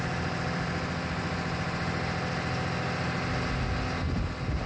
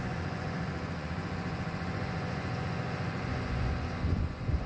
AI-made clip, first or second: second